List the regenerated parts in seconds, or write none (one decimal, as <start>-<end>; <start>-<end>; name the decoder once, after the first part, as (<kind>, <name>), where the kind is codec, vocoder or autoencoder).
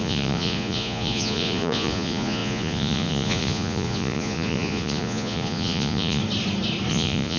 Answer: 0.0-6.2 (vocoder, Vocos); 6.9-7.4